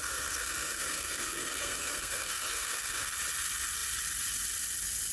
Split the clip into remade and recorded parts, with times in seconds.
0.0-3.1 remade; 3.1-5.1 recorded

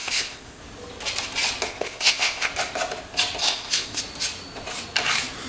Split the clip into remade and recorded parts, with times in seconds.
0.0-0.6 remade; 0.6-1.7 recorded; 1.7-2.5 remade; 2.5-3.4 recorded; 3.4-4.0 remade; 4.0-5.5 recorded

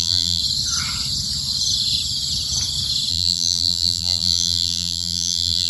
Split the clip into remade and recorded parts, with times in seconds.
0.0-0.4 remade; 0.4-3.1 recorded; 3.1-5.7 remade

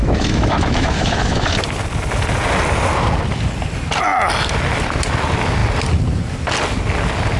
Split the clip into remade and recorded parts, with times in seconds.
0.0-1.5 remade; 1.5-7.4 recorded